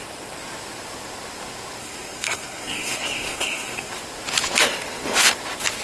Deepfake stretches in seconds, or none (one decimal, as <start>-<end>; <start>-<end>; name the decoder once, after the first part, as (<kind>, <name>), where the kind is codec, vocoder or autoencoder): 1.8-3.9 (codec, SNAC)

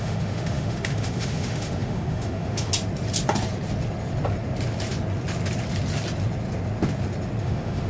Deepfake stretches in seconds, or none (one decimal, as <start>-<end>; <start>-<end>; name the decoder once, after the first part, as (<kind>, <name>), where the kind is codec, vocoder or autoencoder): 0.0-2.7 (autoencoder, DAC-VAE); 7.4-7.9

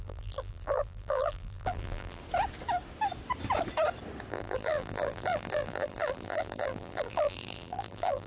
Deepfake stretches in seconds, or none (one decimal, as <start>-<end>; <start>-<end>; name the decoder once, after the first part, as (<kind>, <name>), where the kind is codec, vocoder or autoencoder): 0.0-2.2 (vocoder, BigVGAN v2); 4.3-8.3